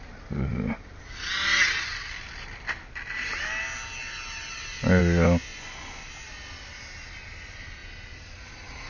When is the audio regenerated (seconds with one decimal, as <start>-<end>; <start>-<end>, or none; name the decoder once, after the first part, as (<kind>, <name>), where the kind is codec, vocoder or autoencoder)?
5.5-6.1 (vocoder, Vocos)